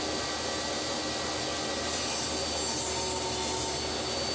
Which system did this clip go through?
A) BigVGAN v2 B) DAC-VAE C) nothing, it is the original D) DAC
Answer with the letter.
C